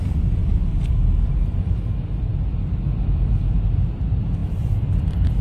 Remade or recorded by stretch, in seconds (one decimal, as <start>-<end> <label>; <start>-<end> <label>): 0.0-0.7 recorded; 0.7-1.7 remade; 1.7-4.4 recorded; 4.4-5.4 remade